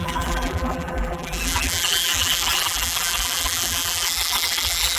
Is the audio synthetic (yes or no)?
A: yes